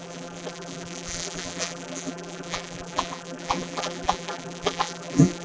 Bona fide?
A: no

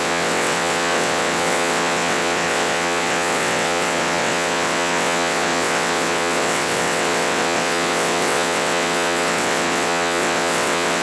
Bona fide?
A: no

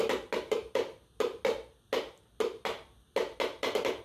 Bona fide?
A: yes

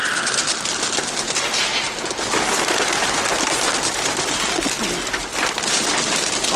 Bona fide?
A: yes